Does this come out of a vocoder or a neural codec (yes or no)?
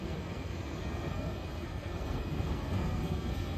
yes